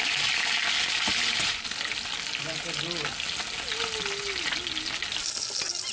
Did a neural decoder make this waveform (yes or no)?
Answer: no